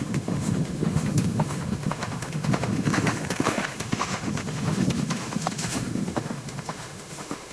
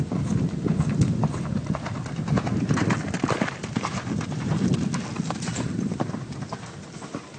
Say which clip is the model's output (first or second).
first